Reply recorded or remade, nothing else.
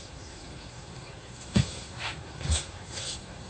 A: remade